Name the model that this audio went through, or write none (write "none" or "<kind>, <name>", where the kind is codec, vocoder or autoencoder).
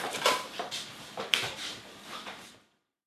vocoder, BigVGAN v2